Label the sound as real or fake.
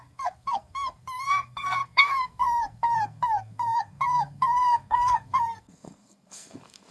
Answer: fake